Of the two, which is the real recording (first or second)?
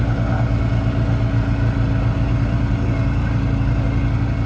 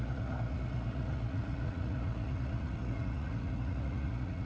first